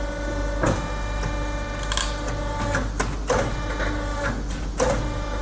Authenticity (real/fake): real